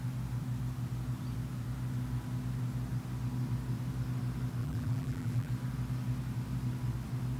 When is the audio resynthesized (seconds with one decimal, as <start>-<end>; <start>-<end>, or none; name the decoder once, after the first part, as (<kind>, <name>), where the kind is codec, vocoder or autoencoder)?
4.6-5.5 (vocoder, BigVGAN v2)